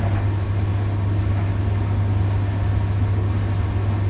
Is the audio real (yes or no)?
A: yes